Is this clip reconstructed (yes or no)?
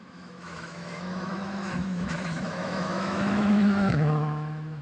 yes